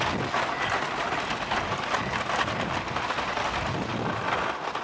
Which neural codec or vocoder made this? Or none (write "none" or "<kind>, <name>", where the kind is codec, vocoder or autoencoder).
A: none